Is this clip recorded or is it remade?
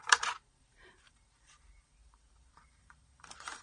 remade